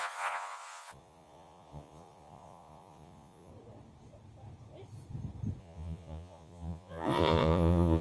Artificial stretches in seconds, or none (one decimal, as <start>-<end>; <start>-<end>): 0.0-3.5; 5.6-8.0